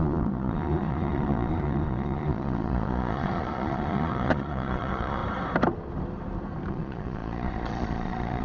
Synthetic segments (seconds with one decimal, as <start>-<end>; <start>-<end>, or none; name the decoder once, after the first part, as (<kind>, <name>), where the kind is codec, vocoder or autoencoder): 0.0-5.2 (vocoder, Vocos); 6.7-8.4